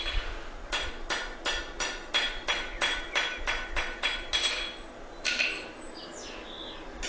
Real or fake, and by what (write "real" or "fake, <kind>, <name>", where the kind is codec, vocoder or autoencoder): real